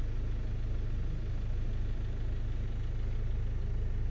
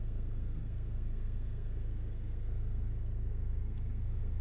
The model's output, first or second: second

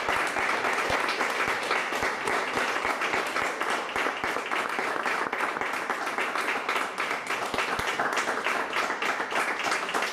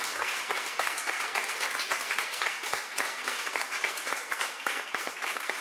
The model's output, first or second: second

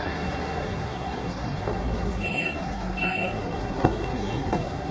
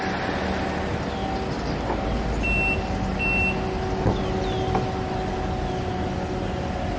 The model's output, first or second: first